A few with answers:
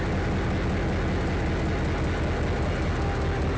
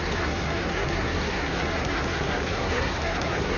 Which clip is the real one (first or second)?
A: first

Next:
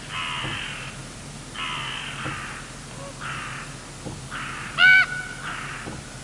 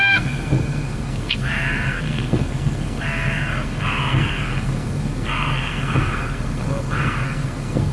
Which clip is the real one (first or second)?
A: first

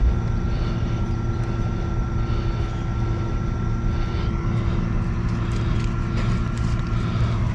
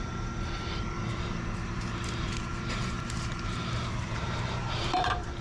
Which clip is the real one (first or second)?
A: first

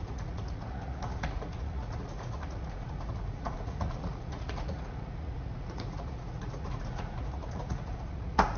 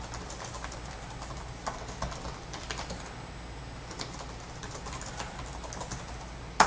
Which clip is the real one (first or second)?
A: second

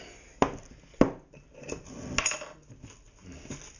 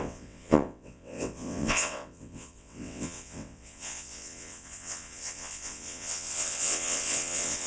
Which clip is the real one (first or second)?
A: first